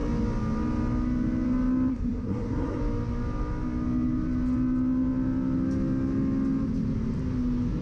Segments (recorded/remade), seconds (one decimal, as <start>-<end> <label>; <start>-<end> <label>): 0.0-1.9 recorded; 1.9-2.8 remade; 2.8-7.8 recorded